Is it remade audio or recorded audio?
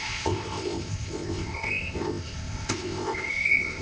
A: remade